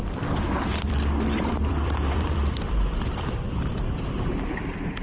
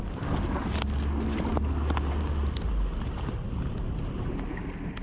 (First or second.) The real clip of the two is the second